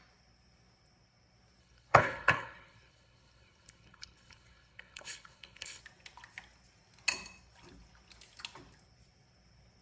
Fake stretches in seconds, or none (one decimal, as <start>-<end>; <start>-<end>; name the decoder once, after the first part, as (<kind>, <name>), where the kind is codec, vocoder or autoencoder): 1.6-5.8 (codec, HILCodec)